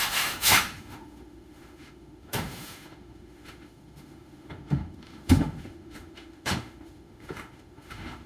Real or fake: fake